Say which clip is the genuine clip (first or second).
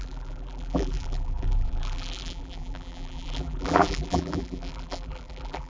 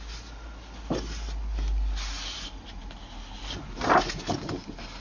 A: second